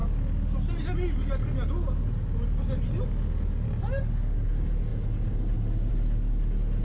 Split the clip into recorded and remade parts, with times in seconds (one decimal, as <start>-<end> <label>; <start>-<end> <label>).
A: 0.0-6.8 recorded